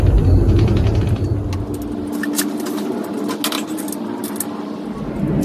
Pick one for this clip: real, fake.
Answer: real